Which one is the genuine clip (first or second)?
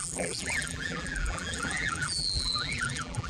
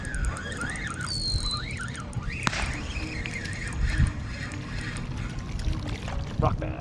second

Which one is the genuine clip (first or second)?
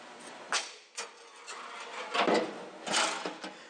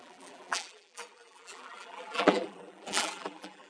first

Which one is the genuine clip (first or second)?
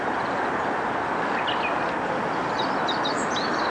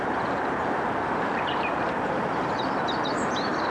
first